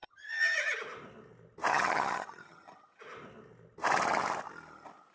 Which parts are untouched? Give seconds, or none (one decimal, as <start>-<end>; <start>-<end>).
0.8-1.7; 3.0-5.1